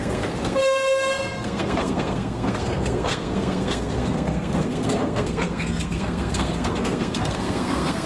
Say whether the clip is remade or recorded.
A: remade